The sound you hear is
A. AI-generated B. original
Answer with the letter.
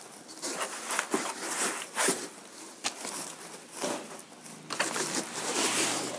B